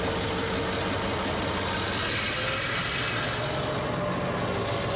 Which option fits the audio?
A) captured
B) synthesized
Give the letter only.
A